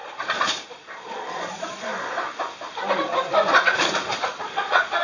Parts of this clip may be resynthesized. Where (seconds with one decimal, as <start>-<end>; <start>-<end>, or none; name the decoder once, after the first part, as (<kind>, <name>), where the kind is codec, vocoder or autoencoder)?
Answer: 0.0-1.9 (vocoder, Vocos); 4.4-5.0